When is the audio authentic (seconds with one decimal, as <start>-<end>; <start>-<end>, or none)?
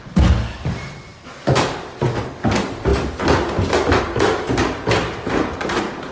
0.0-6.1